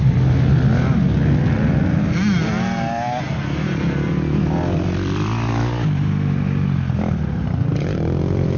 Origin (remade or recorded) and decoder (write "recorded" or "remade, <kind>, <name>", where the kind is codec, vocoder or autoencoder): recorded